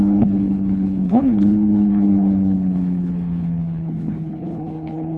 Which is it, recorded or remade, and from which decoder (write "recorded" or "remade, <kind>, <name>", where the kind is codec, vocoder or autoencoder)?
remade, codec, HILCodec